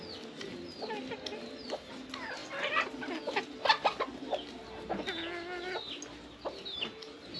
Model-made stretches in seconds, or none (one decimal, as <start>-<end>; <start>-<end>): none